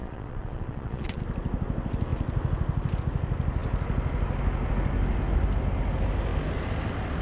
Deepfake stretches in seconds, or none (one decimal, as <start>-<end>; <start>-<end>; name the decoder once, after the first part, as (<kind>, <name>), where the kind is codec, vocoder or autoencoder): 0.0-1.2 (vocoder, Vocos)